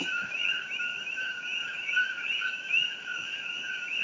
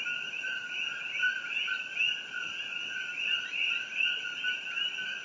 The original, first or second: second